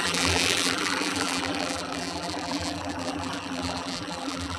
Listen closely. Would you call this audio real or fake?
fake